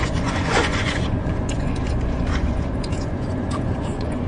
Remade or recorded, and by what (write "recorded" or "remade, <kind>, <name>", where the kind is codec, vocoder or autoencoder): remade, vocoder, Vocos